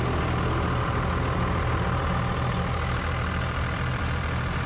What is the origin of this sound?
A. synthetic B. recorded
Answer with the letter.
B